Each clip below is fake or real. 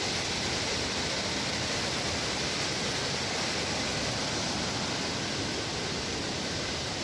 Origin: real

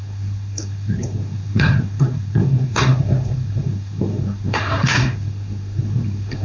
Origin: fake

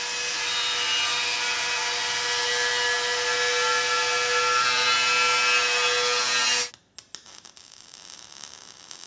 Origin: real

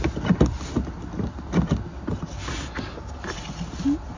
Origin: real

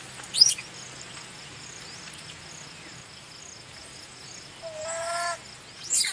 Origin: real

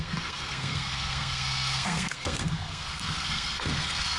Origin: fake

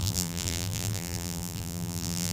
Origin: fake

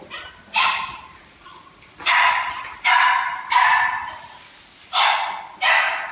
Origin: fake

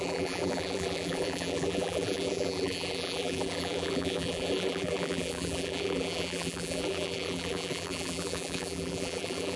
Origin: fake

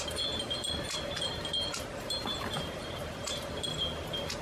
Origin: real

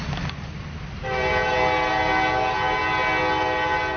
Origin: real